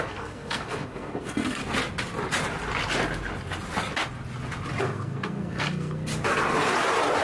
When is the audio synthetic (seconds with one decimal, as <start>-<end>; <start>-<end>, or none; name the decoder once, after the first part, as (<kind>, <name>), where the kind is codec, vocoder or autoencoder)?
0.0-1.6 (codec, SNAC); 4.8-6.1

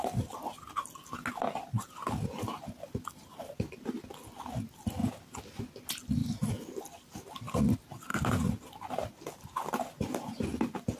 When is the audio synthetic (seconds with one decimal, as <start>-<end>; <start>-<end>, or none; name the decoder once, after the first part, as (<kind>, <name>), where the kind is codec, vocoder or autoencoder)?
none

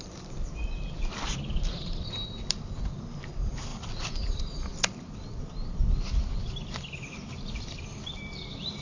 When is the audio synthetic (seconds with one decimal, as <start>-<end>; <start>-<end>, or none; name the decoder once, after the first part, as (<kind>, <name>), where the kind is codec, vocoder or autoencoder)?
none

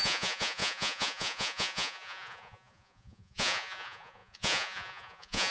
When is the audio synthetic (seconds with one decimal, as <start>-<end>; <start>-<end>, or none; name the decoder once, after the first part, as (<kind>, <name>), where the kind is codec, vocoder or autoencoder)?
0.0-5.5 (vocoder, Vocos)

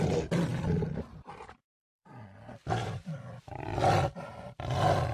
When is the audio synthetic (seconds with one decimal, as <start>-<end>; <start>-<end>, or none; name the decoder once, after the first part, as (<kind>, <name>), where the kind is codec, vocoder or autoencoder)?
0.5-1.3 (vocoder, BigVGAN v2); 2.6-3.4

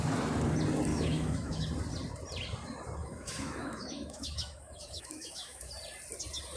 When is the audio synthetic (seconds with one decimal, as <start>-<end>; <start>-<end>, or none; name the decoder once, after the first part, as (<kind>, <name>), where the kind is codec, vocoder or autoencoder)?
0.9-1.6 (autoencoder, DAC-VAE); 3.0-5.7

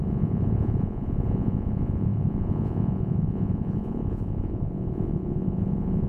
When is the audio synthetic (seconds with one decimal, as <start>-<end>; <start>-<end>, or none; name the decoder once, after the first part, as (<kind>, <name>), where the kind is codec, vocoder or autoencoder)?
0.0-6.1 (vocoder, Vocos)

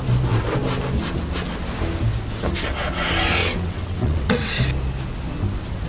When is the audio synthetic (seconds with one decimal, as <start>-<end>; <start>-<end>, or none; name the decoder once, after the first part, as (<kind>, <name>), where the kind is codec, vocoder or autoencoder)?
3.4-4.5 (vocoder, WaveNeXt)